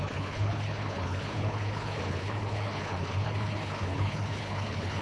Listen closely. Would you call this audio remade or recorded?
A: remade